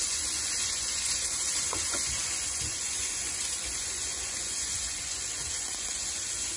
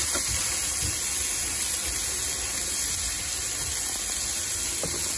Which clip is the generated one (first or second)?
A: first